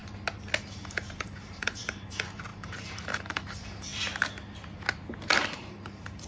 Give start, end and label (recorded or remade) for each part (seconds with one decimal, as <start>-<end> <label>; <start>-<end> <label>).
0.0-0.6 recorded; 0.6-3.9 remade; 3.9-5.7 recorded; 5.7-6.3 remade